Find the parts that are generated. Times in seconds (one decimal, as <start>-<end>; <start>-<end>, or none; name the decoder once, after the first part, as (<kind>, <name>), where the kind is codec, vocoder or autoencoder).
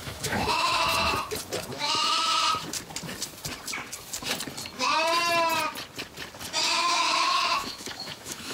0.0-0.9 (autoencoder, DAC-VAE); 1.7-2.4; 6.8-8.5